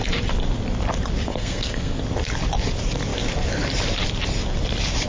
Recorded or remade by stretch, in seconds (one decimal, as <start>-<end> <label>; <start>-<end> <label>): 0.0-1.3 recorded; 1.3-2.0 remade; 2.0-5.1 recorded